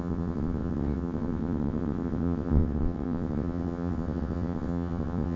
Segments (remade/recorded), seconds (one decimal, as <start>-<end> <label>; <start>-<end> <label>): 0.0-5.4 remade